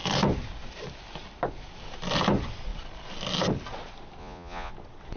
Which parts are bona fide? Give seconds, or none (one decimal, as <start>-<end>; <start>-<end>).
0.0-4.2; 4.7-5.2